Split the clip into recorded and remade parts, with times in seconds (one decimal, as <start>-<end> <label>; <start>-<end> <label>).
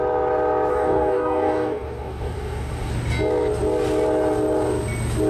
0.0-0.7 recorded; 0.7-2.9 remade; 2.9-5.3 recorded